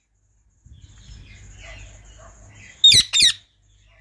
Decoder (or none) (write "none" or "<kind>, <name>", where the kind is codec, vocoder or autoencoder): none